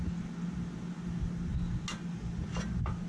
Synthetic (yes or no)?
no